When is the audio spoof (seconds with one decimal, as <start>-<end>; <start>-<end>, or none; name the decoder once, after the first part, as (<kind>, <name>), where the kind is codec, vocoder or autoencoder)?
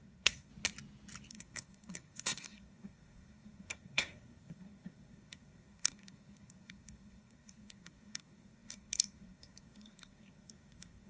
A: 0.0-0.5 (codec, SNAC); 1.3-11.1